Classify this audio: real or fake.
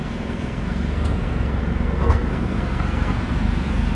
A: fake